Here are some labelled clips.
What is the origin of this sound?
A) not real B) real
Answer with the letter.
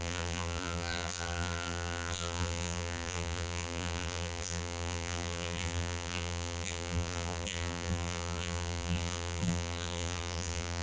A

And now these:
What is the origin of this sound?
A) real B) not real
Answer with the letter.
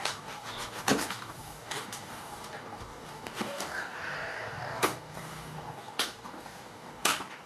B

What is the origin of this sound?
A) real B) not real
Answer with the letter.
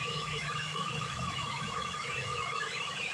B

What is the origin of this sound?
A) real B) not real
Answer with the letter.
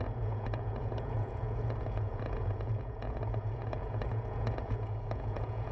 B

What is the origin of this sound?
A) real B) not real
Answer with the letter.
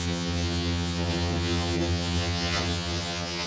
B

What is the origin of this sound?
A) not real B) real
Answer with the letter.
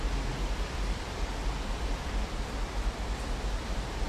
A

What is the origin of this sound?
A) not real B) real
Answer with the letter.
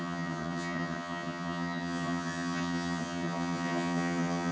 A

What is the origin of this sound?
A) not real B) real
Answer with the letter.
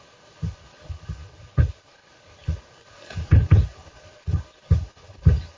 A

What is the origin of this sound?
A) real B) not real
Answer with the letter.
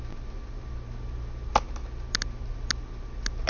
A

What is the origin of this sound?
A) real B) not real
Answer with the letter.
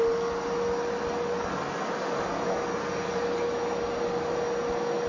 A